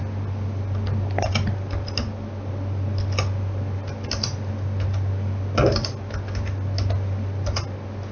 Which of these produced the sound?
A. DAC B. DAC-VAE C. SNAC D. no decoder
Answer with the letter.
D